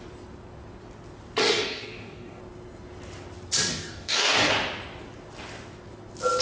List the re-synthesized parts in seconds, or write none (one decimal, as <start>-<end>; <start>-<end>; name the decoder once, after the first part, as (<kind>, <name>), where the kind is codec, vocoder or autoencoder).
1.4-2.4 (codec, DAC); 3.7-4.5